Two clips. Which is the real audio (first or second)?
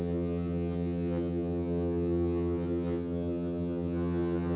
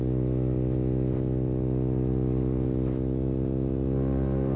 second